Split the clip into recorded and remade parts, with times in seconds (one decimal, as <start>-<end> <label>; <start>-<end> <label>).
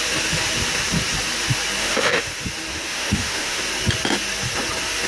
0.0-1.8 recorded; 1.8-2.3 remade; 2.3-2.7 recorded; 2.7-3.6 remade; 3.6-5.1 recorded